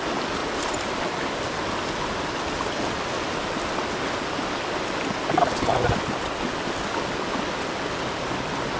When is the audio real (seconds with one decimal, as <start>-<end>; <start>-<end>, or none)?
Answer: 0.0-8.8